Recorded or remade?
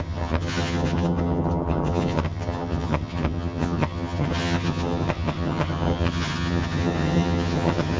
remade